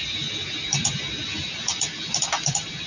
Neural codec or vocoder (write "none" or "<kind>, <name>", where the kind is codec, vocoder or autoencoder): none